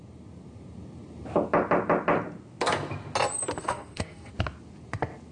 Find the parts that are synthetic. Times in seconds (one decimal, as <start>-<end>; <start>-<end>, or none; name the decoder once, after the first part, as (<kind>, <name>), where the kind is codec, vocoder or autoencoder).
3.6-4.3 (codec, SNAC)